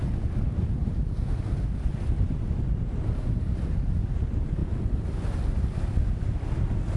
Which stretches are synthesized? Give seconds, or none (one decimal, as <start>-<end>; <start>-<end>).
none